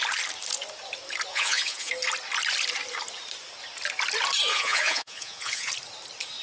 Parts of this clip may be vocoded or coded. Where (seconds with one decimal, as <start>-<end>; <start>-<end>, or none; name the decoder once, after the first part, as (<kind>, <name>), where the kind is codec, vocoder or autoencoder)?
1.3-1.9 (vocoder, Vocos); 4.5-5.7